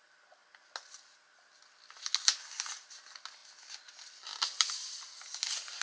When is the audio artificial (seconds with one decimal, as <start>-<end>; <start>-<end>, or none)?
none